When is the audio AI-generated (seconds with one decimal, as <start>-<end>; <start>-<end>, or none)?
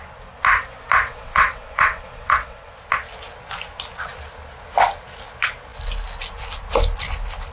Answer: 1.1-2.7